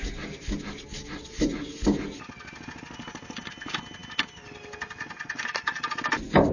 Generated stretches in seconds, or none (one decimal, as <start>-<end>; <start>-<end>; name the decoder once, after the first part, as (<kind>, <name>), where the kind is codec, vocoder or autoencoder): none